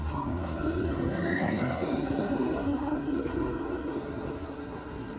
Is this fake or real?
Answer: fake